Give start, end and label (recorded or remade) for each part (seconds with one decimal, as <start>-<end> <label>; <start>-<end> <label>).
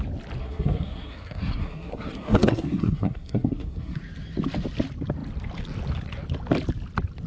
0.0-0.4 recorded; 0.4-4.0 remade; 4.0-7.3 recorded